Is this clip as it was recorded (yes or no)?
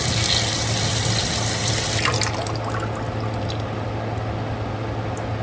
yes